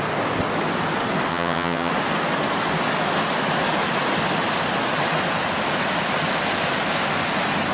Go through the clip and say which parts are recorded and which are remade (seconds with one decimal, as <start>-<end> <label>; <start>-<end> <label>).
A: 0.0-1.3 recorded; 1.3-1.9 remade; 1.9-7.7 recorded

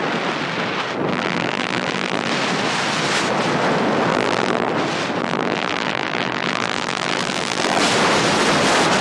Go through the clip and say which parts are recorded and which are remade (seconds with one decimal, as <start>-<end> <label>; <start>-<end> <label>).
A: 0.0-1.1 recorded; 1.1-2.3 remade; 2.3-4.1 recorded; 4.1-4.7 remade; 4.7-5.2 recorded; 5.2-7.8 remade; 7.8-9.0 recorded

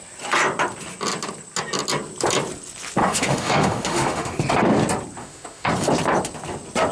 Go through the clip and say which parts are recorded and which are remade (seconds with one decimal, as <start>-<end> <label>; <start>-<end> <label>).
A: 0.0-3.0 recorded; 3.0-4.4 remade; 4.4-5.2 recorded; 5.2-5.7 remade; 5.7-6.9 recorded